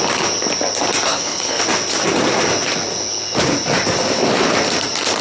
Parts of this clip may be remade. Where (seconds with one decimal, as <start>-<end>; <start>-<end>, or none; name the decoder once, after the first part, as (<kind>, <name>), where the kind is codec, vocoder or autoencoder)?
1.1-1.6 (codec, HILCodec)